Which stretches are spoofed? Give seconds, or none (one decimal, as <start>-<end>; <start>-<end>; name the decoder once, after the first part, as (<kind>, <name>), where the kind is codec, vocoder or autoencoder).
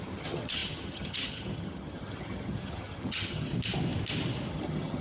0.0-3.5 (vocoder, HiFi-GAN); 4.5-5.0